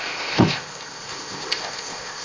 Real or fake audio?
fake